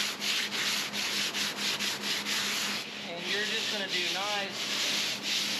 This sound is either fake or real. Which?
real